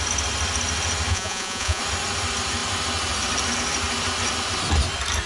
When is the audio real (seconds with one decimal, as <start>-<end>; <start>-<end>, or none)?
0.0-1.1; 1.8-5.3